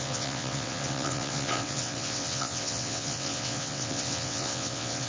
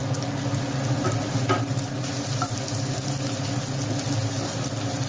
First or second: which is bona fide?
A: second